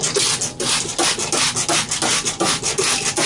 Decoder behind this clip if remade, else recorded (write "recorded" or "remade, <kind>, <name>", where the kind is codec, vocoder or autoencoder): recorded